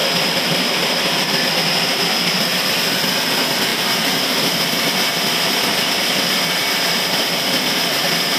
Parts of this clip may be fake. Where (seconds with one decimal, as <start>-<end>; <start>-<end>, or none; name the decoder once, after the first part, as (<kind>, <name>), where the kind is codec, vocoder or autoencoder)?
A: none